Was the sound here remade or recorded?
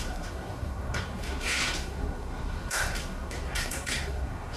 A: remade